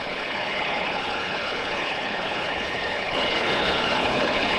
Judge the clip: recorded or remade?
remade